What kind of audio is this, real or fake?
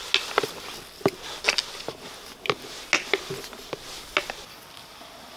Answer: real